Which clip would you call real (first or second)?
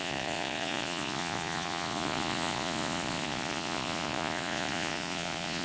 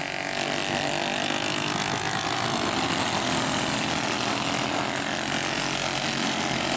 second